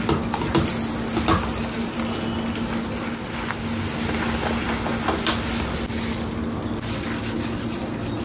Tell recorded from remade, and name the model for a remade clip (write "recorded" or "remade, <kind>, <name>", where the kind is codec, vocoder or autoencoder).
recorded